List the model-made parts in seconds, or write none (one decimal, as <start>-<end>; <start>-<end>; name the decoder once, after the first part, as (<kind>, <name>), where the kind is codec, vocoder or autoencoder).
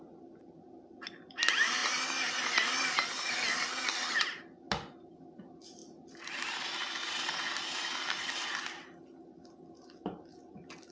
none